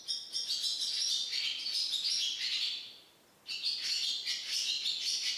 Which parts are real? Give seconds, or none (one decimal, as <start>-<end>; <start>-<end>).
0.0-5.4